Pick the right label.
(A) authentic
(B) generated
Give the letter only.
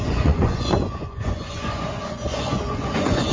B